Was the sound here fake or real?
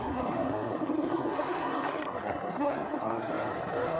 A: fake